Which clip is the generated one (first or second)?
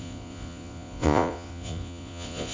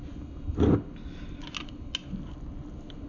first